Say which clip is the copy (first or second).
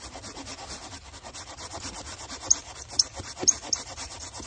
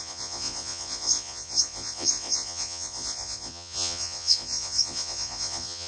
second